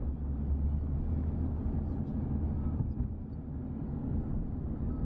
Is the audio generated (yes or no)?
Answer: no